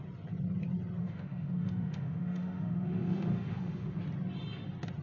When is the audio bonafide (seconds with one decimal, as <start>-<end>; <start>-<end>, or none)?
0.0-1.0; 4.0-5.0